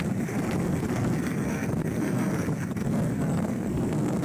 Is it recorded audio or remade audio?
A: remade